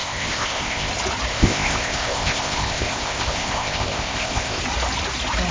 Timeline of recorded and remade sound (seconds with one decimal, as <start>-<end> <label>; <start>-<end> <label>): 0.0-0.9 remade; 0.9-1.3 recorded; 1.3-4.6 remade; 4.6-5.5 recorded